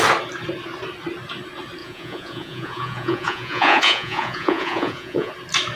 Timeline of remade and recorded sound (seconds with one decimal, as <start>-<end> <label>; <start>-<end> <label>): 0.0-1.8 recorded; 1.8-5.3 remade; 5.3-5.8 recorded